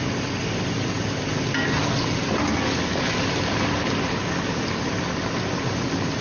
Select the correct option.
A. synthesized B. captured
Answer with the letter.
B